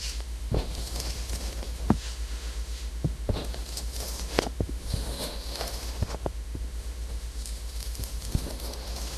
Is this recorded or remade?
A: remade